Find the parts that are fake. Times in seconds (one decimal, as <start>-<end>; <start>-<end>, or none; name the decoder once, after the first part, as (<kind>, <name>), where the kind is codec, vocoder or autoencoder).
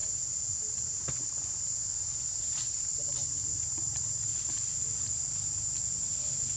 2.3-4.3 (vocoder, BigVGAN v2)